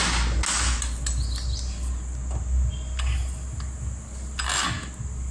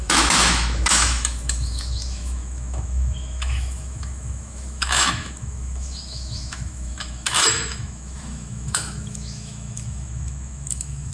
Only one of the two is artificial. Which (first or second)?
second